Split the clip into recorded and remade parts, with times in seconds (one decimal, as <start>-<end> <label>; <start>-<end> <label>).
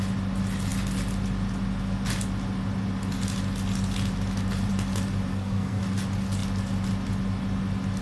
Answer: 0.0-5.3 recorded; 5.3-5.8 remade; 5.8-8.0 recorded